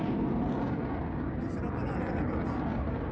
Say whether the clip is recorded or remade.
recorded